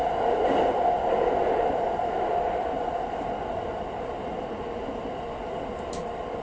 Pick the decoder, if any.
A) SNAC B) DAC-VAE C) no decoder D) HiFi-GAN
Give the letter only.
C